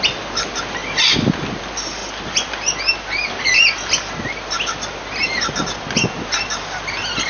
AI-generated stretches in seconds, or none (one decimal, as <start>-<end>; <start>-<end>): none